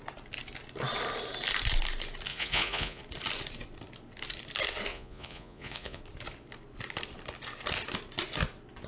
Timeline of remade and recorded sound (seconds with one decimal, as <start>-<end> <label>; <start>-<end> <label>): 0.0-2.3 recorded; 2.3-3.0 remade; 3.0-4.9 recorded; 4.9-6.0 remade; 6.0-8.9 recorded